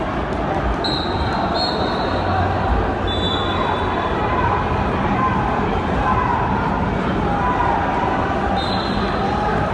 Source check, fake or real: real